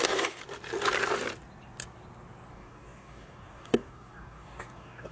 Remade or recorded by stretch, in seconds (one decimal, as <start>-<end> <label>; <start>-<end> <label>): 0.0-0.4 remade; 0.4-2.5 recorded; 2.5-5.1 remade